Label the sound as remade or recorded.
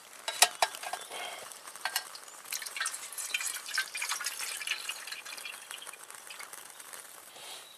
remade